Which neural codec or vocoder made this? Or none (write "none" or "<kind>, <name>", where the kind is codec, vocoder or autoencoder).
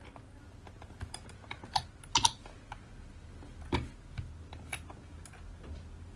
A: none